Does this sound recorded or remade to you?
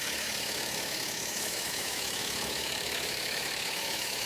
remade